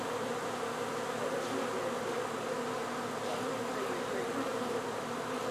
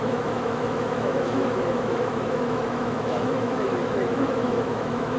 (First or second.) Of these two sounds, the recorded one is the first